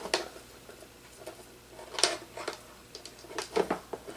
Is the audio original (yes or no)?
yes